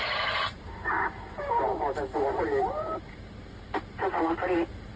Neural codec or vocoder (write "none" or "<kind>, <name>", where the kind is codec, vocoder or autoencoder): vocoder, BigVGAN v2